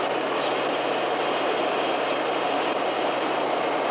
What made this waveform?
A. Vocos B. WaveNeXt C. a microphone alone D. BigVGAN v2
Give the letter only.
C